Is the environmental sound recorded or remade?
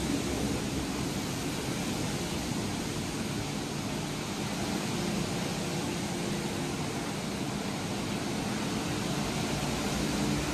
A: recorded